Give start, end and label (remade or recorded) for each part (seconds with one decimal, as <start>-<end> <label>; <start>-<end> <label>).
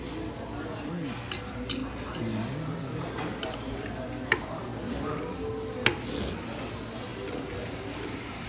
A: 0.0-8.5 recorded